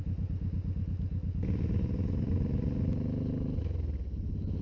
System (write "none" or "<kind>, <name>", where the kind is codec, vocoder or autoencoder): none